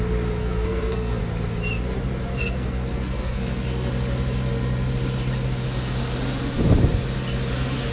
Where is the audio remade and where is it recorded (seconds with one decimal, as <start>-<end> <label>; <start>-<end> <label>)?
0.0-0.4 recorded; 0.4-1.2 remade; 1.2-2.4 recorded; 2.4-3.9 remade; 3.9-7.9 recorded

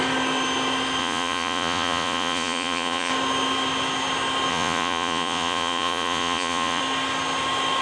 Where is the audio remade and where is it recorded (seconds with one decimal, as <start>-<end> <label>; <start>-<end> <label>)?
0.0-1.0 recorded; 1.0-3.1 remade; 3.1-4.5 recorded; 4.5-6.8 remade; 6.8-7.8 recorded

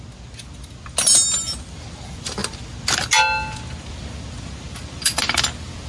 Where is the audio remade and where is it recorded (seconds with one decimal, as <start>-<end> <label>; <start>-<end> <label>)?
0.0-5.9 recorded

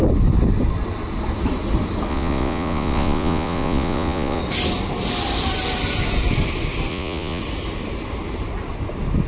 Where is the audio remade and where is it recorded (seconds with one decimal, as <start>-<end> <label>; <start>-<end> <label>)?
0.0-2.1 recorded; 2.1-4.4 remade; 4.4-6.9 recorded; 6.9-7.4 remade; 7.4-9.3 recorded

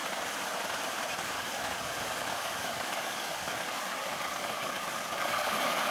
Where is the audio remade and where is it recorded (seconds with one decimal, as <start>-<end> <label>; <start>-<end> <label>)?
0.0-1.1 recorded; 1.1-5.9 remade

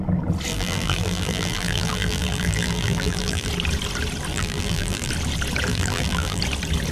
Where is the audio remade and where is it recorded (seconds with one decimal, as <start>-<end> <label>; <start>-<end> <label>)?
0.0-0.5 recorded; 0.5-3.5 remade; 3.5-4.3 recorded; 4.3-5.1 remade; 5.1-5.7 recorded; 5.7-6.4 remade; 6.4-6.9 recorded